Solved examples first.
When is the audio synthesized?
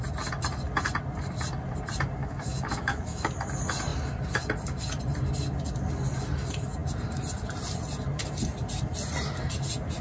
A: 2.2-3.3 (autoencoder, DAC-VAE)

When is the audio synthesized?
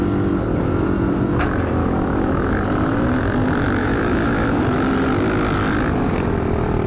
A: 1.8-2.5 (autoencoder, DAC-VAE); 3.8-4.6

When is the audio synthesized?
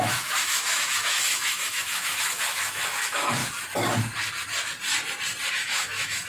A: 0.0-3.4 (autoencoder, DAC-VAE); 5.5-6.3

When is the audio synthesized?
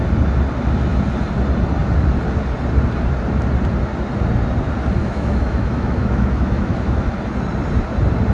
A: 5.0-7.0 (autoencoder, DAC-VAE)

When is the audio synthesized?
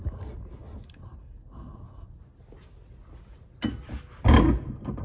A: none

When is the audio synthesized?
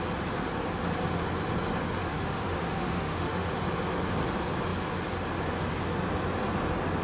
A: 2.0-3.5 (autoencoder, DAC-VAE)